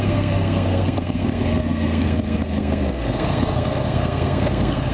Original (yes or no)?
no